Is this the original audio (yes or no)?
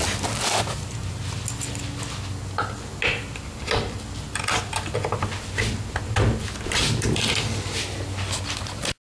yes